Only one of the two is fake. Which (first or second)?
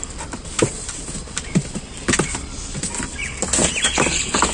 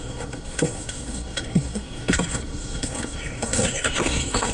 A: second